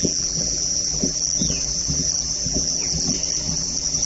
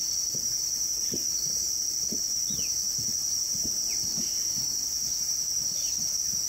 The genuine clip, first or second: second